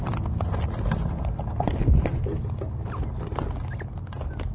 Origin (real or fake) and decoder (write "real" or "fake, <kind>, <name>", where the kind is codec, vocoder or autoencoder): real